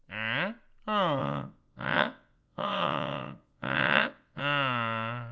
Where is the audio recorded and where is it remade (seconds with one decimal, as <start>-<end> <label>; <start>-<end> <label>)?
0.0-1.2 recorded; 1.2-4.4 remade; 4.4-5.3 recorded